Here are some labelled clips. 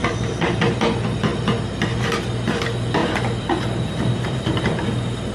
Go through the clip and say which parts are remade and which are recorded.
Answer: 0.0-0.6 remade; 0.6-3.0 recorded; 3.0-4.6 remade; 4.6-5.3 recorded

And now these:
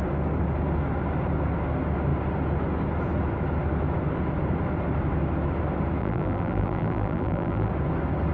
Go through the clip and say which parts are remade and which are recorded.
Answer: 0.0-6.0 recorded; 6.0-7.7 remade; 7.7-8.3 recorded

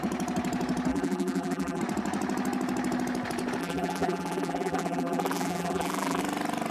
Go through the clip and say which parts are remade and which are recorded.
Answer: 0.0-0.9 recorded; 0.9-1.8 remade; 1.8-3.6 recorded; 3.6-6.2 remade; 6.2-6.7 recorded

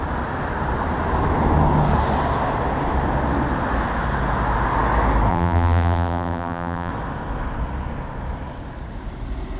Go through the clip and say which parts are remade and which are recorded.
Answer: 0.0-5.3 recorded; 5.3-6.9 remade; 6.9-9.6 recorded